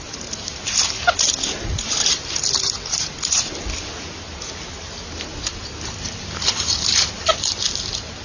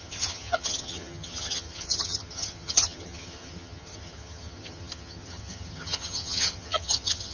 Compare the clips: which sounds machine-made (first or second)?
second